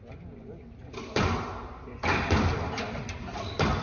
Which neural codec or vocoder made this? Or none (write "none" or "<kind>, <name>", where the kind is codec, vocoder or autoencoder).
none